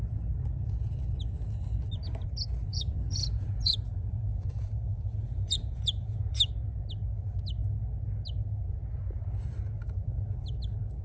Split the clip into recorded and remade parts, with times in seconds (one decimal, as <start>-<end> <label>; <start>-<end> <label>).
0.0-2.7 recorded; 2.7-6.4 remade; 6.4-11.0 recorded